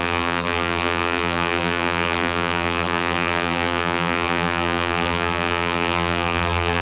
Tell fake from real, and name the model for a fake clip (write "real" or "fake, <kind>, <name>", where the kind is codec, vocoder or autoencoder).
fake, vocoder, BigVGAN v2